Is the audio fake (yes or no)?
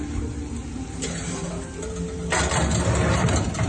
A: no